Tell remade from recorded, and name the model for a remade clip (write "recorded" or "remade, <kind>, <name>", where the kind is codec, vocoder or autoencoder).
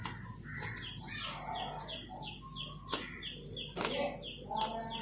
recorded